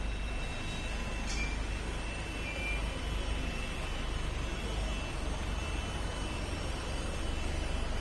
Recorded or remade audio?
recorded